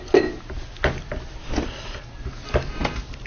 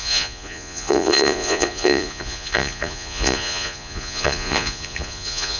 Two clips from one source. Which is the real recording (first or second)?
first